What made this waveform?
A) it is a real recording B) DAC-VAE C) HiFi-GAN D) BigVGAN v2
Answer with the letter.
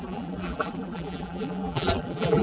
D